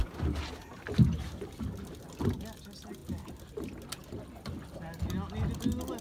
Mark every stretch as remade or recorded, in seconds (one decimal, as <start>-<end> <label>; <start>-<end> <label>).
0.0-6.0 recorded